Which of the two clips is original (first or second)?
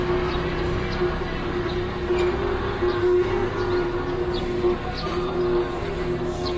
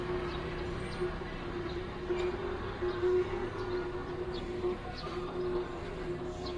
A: first